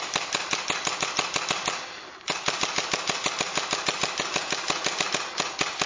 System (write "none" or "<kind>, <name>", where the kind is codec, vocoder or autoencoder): none